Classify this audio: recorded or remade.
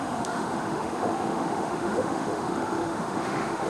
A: remade